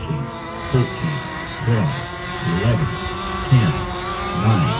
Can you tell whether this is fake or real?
real